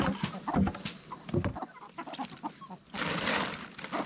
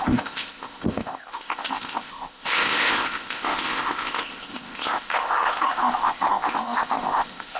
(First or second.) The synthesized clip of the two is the second